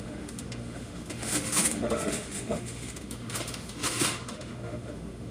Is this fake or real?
fake